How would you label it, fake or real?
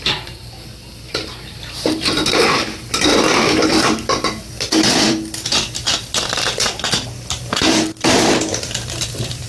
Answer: fake